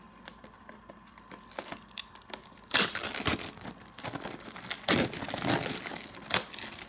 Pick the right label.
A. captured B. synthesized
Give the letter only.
A